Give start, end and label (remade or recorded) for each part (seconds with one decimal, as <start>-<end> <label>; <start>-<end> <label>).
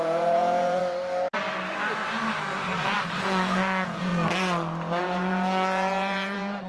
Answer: 0.0-0.8 remade; 0.8-3.2 recorded; 3.2-4.1 remade; 4.1-5.0 recorded; 5.0-6.7 remade